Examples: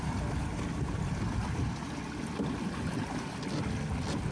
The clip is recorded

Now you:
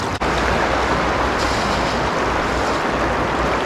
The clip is recorded